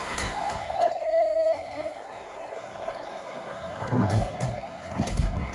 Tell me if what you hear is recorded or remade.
remade